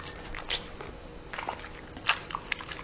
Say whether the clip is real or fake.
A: real